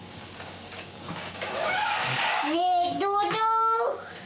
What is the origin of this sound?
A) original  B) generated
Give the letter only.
B